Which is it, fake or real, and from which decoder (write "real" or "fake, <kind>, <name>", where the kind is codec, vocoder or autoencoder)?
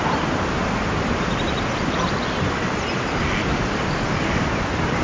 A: real